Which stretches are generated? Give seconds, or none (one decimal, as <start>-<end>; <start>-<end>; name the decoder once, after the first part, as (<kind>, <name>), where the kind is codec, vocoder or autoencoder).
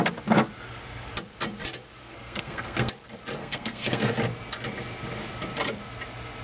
2.0-2.9 (codec, SNAC); 3.4-4.1